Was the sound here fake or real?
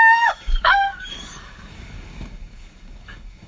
fake